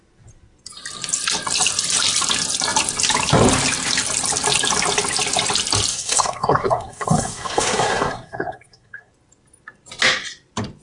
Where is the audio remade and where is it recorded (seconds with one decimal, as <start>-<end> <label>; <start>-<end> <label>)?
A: 0.0-5.9 recorded; 5.9-9.1 remade; 9.1-10.8 recorded